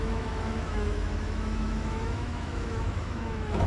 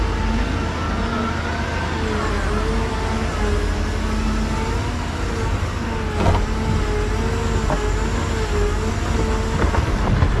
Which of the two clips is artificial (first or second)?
first